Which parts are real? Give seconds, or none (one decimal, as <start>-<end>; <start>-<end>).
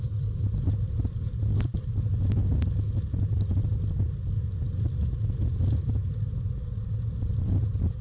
0.0-8.0